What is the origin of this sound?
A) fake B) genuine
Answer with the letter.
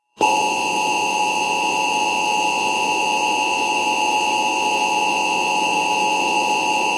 A